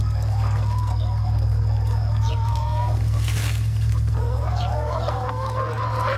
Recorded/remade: remade